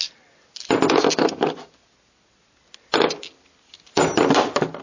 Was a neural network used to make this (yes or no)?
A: no